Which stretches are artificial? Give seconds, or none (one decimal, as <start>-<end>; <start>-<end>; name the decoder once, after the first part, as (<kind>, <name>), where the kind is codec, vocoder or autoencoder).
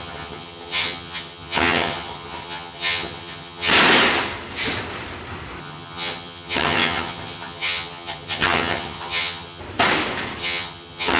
0.0-3.7 (vocoder, HiFi-GAN); 5.6-9.6; 10.4-11.2